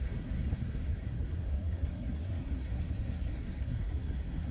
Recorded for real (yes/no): no